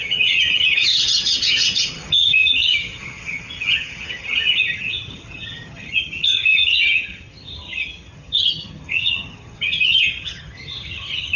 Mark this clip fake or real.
fake